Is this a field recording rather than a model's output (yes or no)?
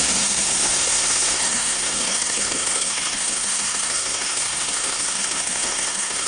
no